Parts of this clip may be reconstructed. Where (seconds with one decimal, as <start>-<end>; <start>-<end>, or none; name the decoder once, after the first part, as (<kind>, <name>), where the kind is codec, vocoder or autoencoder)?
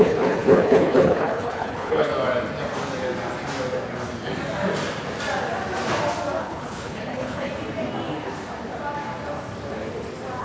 0.0-2.1 (codec, HILCodec); 6.4-7.5